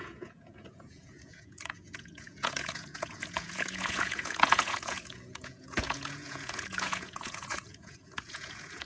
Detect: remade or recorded remade